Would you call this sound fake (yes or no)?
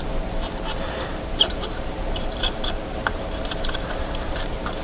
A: yes